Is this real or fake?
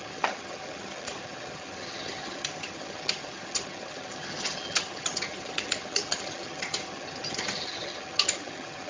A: fake